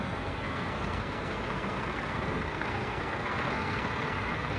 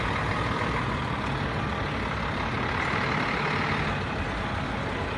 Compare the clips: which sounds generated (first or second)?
first